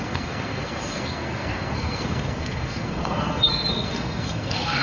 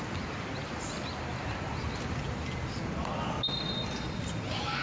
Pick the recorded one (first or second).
second